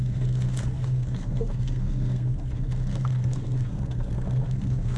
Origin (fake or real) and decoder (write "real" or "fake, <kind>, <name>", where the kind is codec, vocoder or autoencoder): fake, codec, SNAC